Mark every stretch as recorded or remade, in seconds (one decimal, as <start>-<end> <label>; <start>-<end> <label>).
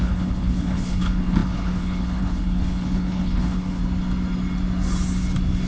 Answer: 0.0-3.8 remade; 3.8-5.7 recorded